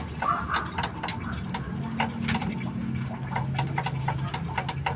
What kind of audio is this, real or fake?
real